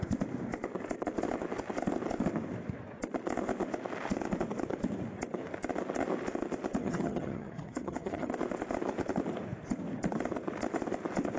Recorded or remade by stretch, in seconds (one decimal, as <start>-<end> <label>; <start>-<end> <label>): 0.0-6.8 recorded; 6.8-8.3 remade; 8.3-11.4 recorded

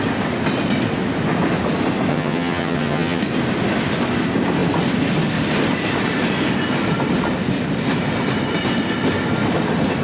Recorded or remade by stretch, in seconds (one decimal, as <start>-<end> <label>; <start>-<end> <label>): 0.0-2.1 recorded; 2.1-3.2 remade; 3.2-10.0 recorded

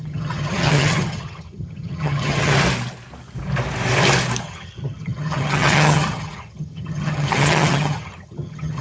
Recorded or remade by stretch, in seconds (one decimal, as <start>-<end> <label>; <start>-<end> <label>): 0.0-2.5 remade; 2.5-4.4 recorded; 4.4-8.8 remade

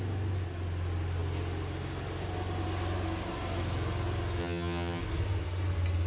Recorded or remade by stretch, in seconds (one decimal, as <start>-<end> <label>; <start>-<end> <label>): 0.0-4.4 recorded; 4.4-5.0 remade; 5.0-6.1 recorded